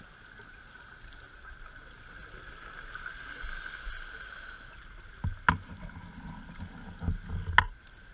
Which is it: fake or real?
real